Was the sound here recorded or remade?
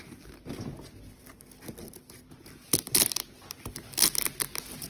recorded